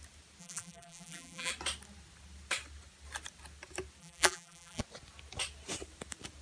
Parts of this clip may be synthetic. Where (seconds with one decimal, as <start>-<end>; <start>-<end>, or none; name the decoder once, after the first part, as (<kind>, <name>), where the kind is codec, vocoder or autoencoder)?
0.4-1.5 (vocoder, BigVGAN v2); 4.0-4.8